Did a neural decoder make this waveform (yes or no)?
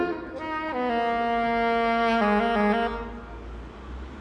no